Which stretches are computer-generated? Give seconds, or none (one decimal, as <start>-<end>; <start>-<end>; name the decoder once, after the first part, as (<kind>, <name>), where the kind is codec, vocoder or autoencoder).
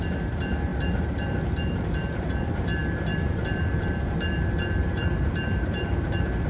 0.0-6.5 (vocoder, BigVGAN v2)